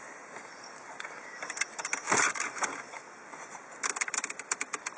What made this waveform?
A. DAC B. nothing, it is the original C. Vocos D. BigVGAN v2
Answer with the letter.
B